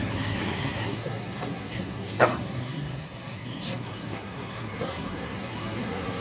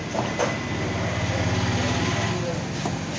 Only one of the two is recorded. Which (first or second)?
second